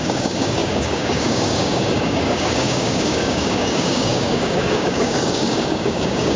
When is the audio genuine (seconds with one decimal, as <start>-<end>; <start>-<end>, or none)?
none